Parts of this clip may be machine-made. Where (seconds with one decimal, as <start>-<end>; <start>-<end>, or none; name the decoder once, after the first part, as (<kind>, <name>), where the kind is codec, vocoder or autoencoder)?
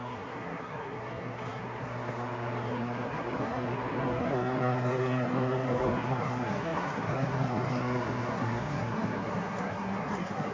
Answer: 0.0-10.5 (codec, SNAC)